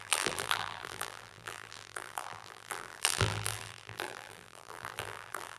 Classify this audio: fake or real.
fake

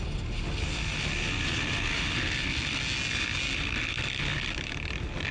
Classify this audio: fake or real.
real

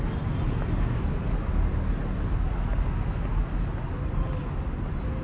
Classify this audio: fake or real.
real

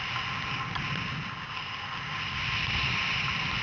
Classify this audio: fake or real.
real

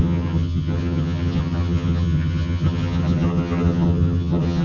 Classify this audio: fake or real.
fake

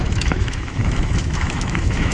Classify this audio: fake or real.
fake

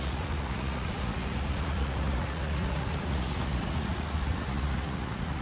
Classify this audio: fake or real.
fake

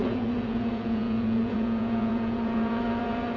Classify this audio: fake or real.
fake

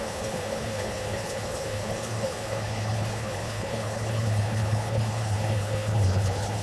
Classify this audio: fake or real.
fake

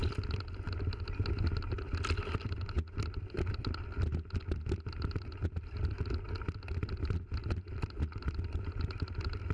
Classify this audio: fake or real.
real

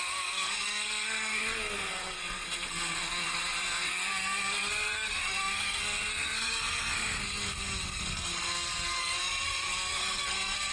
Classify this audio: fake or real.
fake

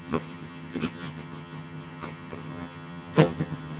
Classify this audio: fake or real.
fake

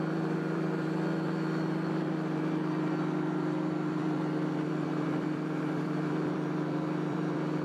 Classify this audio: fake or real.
fake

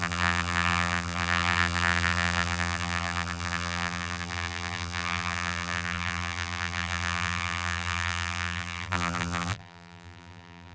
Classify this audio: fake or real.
fake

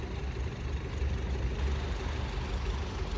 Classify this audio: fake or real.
real